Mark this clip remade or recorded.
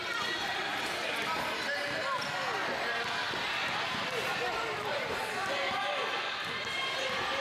recorded